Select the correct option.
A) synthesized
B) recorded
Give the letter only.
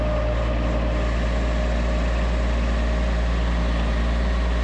B